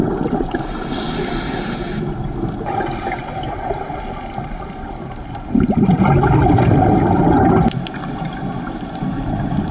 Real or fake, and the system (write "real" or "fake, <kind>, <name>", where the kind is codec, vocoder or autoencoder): real